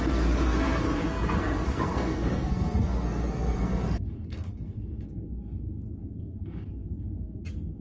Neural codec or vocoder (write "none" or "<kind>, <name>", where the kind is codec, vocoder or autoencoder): codec, SNAC